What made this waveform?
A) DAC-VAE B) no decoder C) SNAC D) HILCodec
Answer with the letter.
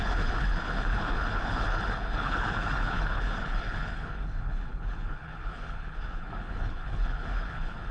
D